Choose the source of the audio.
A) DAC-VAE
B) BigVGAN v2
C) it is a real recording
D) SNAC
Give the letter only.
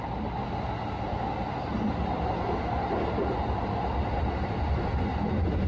C